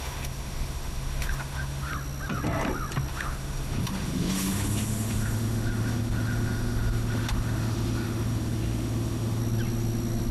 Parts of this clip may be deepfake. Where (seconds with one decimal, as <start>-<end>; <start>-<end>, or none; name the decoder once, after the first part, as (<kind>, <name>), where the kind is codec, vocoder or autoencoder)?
0.0-1.9 (autoencoder, DAC-VAE); 3.1-9.4